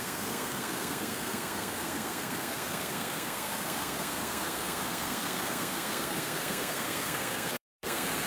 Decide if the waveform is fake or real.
fake